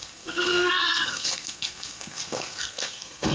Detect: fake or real fake